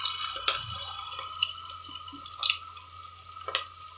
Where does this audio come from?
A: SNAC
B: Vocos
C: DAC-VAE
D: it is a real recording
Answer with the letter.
D